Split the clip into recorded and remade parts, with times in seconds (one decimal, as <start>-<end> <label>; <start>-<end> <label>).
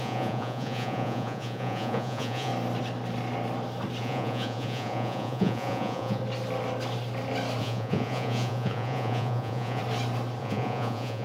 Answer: 0.0-2.5 remade; 2.5-4.0 recorded; 4.0-6.2 remade; 6.2-7.6 recorded; 7.6-9.8 remade; 9.8-10.4 recorded; 10.4-11.2 remade